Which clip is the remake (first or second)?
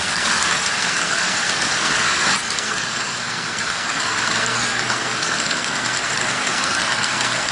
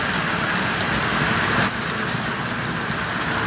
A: first